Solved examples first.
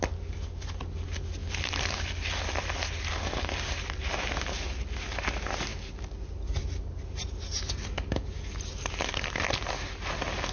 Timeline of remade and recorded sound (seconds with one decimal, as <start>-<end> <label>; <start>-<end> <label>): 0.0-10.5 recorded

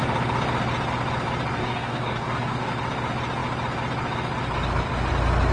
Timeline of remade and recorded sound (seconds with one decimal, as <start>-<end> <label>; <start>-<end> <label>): 0.0-1.6 recorded; 1.6-2.7 remade; 2.7-5.5 recorded

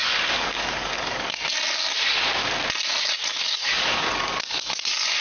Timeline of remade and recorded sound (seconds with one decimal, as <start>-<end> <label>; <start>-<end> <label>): 0.0-1.5 remade; 1.5-3.3 recorded; 3.3-5.2 remade

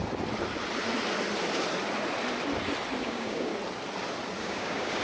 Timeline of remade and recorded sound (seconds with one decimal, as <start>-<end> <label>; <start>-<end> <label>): 0.0-3.0 recorded; 3.0-3.5 remade; 3.5-4.4 recorded; 4.4-5.0 remade